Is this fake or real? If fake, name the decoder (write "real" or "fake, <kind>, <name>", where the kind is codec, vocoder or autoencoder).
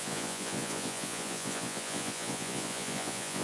fake, vocoder, Vocos